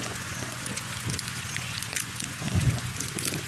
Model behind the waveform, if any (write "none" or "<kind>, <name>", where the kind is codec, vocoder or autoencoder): vocoder, Vocos